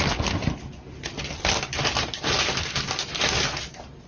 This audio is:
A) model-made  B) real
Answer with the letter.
B